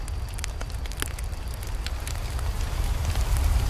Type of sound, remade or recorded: recorded